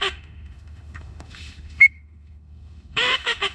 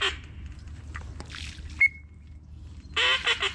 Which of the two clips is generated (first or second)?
first